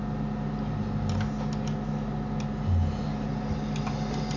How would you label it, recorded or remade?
recorded